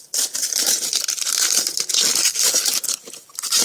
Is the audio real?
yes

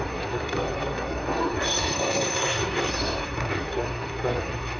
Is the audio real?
no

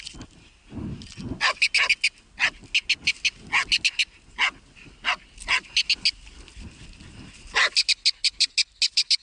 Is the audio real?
yes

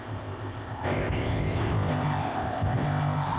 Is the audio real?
no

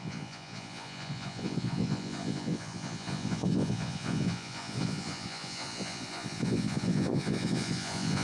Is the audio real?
no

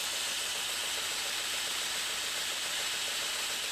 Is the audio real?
yes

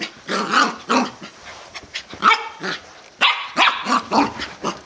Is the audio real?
yes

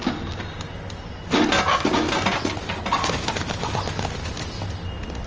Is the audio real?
yes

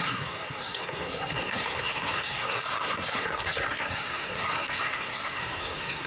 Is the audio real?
no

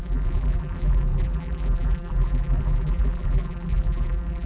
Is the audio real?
no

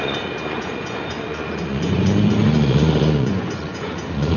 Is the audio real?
no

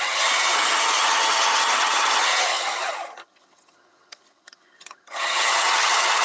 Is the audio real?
no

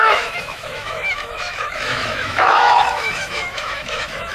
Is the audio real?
no